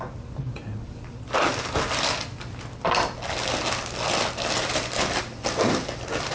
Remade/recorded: recorded